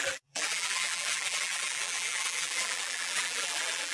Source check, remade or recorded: remade